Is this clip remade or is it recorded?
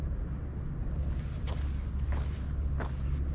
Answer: recorded